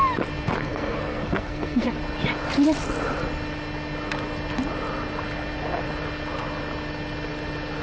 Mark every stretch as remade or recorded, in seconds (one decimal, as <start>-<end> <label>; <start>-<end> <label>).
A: 0.0-0.6 recorded; 0.6-2.0 remade; 2.0-7.8 recorded